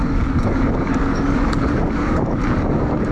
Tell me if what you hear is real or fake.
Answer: fake